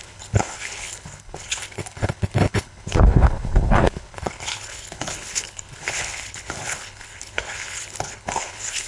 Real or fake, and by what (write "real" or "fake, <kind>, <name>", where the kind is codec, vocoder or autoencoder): fake, codec, HILCodec